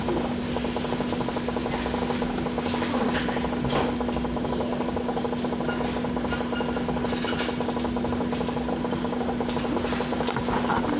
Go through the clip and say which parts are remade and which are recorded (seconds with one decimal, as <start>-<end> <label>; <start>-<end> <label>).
0.0-11.0 recorded